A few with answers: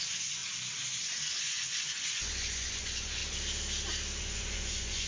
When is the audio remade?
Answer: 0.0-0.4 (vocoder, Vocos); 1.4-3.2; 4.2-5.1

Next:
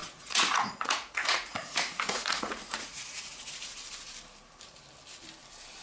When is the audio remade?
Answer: 0.0-3.5 (vocoder, Vocos)